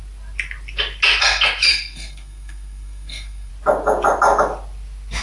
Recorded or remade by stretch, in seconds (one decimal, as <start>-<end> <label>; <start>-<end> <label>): 0.0-1.7 recorded; 1.7-3.5 remade; 3.5-5.2 recorded